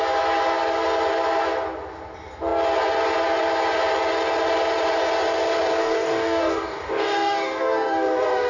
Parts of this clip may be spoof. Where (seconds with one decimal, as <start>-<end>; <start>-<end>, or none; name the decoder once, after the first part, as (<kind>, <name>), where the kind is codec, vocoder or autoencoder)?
5.8-8.5 (codec, DAC)